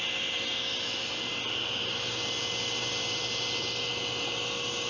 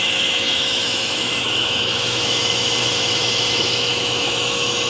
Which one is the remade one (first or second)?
second